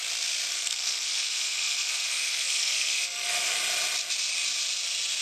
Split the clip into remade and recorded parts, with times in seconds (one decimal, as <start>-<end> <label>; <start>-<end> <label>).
0.0-0.5 recorded; 0.5-3.6 remade; 3.6-5.2 recorded